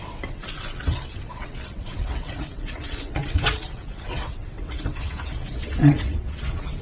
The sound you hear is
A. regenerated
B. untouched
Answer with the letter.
A